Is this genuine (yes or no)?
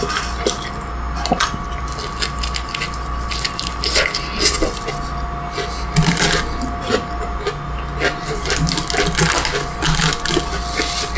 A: yes